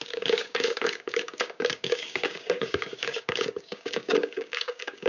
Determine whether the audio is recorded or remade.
remade